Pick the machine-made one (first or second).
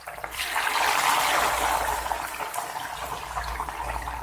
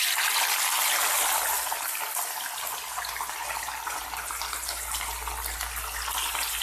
first